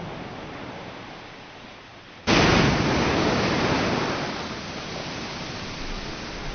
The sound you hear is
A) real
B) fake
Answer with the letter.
A